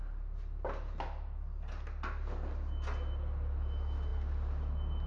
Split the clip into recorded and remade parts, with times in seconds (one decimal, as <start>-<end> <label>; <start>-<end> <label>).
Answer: 0.0-5.1 recorded